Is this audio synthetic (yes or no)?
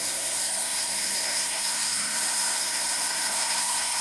yes